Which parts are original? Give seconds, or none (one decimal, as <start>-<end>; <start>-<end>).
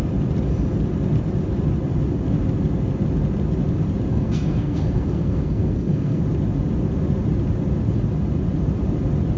0.0-4.1; 6.2-9.4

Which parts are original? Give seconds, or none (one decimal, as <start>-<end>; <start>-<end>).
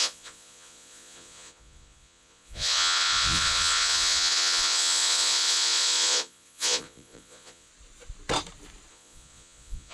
7.7-8.9